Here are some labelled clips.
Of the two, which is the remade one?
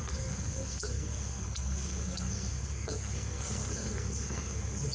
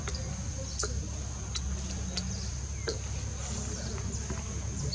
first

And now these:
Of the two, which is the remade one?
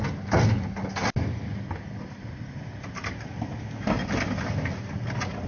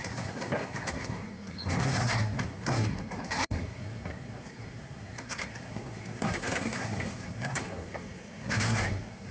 second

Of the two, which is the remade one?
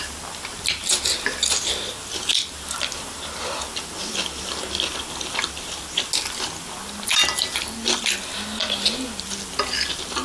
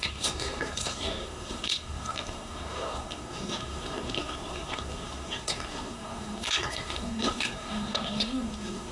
second